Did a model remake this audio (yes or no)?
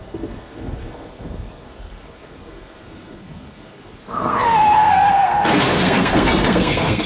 yes